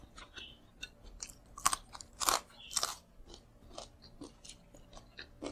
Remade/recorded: recorded